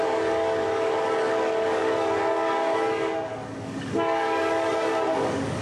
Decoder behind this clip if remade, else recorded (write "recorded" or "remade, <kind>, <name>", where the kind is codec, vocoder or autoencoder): remade, codec, DAC